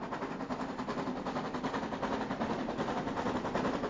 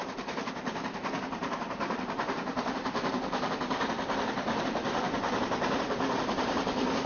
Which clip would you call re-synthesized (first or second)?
second